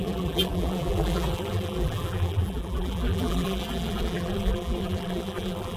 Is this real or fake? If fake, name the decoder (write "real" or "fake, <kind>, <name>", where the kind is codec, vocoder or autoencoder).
fake, vocoder, BigVGAN v2